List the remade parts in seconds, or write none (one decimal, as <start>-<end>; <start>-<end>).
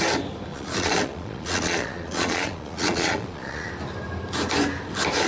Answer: 0.5-3.7